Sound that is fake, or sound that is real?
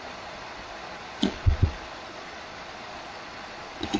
fake